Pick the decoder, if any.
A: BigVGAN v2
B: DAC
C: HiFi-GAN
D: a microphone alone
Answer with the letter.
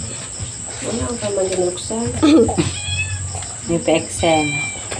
D